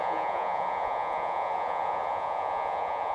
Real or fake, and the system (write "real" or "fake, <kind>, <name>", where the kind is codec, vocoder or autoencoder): fake, vocoder, Vocos